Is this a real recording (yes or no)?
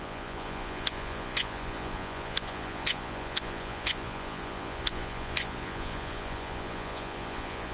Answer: no